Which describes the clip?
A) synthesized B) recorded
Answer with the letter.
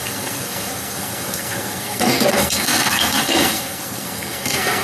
A